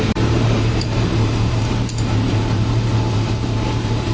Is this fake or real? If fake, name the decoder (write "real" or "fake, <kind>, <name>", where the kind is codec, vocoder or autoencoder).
fake, vocoder, BigVGAN v2